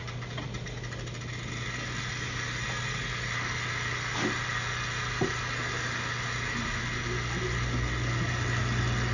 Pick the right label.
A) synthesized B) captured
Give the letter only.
B